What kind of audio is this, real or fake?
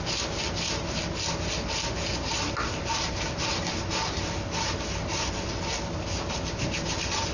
real